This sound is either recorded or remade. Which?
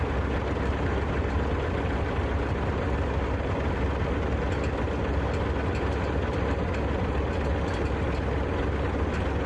recorded